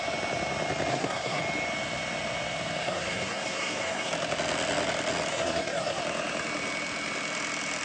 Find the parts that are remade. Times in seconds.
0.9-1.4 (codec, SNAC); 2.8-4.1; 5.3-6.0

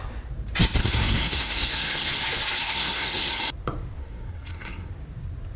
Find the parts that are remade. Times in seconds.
0.8-2.1 (codec, SNAC); 2.6-3.3; 4.0-4.9

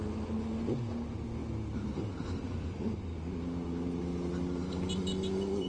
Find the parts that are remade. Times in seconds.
none

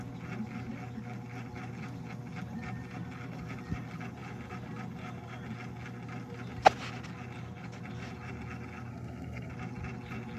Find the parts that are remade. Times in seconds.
8.9-9.5 (codec, SNAC)

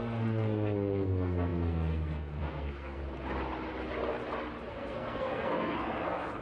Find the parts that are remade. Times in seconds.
0.0-3.0 (codec, SNAC); 4.7-6.4

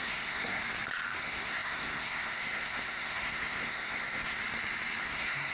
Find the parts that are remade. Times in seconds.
0.0-0.6 (codec, SNAC); 1.2-4.4; 5.0-5.5